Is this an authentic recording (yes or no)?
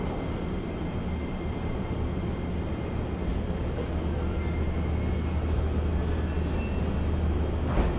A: yes